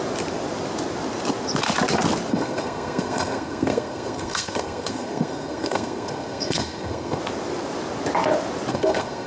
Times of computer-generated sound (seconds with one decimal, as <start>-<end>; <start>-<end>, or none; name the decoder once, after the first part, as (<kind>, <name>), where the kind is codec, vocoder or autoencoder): 2.3-7.2 (codec, SNAC); 8.7-9.3